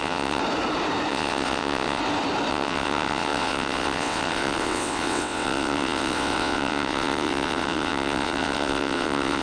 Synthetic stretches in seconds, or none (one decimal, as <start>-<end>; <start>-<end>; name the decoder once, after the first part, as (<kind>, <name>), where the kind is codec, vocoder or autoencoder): 0.0-0.4 (vocoder, WaveNeXt); 1.1-2.0; 2.5-9.4